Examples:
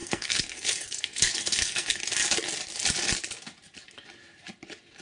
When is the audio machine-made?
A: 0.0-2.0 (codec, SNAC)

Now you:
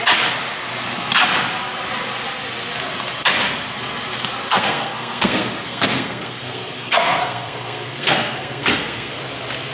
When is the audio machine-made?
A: 4.5-9.2 (codec, SNAC)

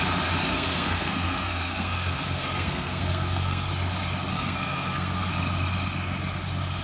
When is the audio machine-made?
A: 0.5-3.7 (codec, SNAC); 4.3-5.3